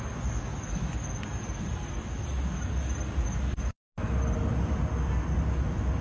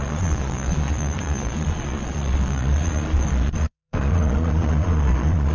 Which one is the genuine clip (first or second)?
first